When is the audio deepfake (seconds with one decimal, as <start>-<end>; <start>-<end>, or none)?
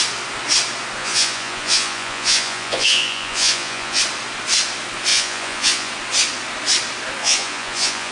1.0-4.0; 5.1-5.9; 7.2-8.1